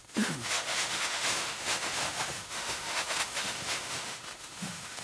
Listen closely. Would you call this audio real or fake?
fake